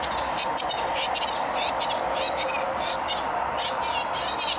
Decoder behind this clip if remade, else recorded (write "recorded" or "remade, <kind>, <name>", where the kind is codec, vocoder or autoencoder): recorded